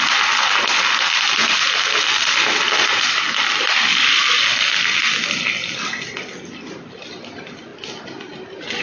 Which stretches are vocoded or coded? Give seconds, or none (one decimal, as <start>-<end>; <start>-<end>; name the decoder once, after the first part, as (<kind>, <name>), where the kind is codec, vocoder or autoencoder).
none